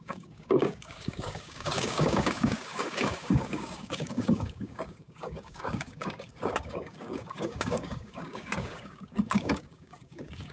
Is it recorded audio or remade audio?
remade